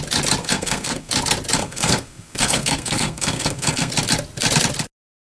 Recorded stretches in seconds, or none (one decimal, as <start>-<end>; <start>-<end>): 0.0-0.4; 1.1-1.6; 3.9-5.2